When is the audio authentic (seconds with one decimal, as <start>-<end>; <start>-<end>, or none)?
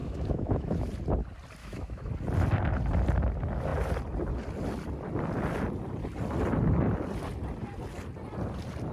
0.9-1.6; 2.1-8.9